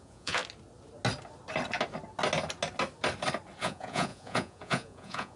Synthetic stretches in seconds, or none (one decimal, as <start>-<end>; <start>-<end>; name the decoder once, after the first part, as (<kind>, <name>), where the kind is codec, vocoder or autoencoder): 0.0-0.4 (vocoder, Vocos); 3.6-5.4